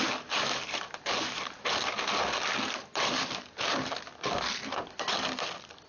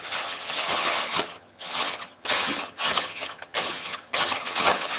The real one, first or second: first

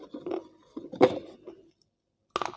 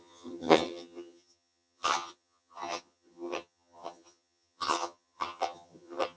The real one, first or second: first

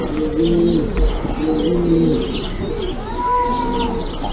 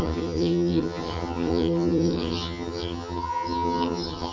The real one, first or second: first